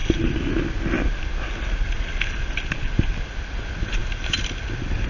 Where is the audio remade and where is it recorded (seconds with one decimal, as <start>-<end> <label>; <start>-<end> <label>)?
0.0-5.1 recorded